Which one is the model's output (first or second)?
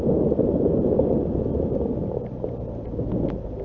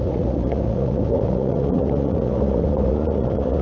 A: second